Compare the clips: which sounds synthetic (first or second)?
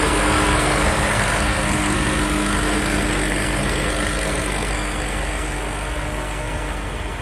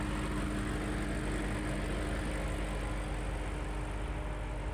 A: first